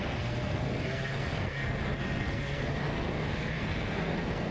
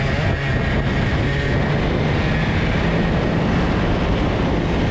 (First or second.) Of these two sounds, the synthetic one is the first